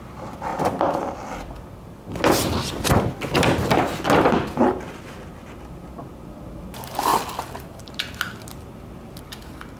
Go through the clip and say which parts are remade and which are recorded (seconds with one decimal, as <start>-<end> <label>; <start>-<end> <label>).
0.0-9.8 recorded